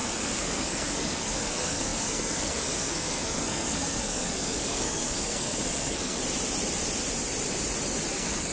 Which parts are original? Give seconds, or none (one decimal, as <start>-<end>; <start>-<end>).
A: 6.2-8.1